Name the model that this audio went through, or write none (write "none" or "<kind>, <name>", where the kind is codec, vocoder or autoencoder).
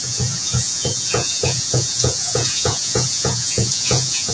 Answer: vocoder, Vocos